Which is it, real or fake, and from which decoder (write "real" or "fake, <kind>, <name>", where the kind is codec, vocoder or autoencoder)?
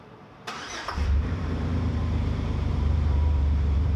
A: fake, vocoder, BigVGAN v2